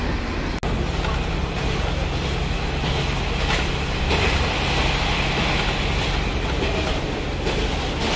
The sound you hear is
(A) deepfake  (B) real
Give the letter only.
B